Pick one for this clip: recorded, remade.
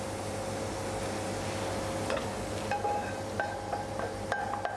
recorded